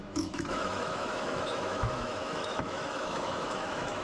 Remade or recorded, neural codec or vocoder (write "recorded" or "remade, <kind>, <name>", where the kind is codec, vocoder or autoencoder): remade, autoencoder, DAC-VAE